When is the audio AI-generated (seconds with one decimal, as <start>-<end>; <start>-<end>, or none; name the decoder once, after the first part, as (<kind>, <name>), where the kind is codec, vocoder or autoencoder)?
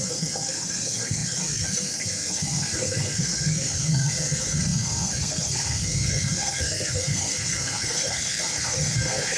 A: 0.0-9.4 (codec, SNAC)